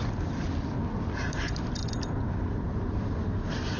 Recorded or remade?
recorded